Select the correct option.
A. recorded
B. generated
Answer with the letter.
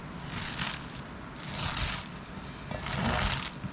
A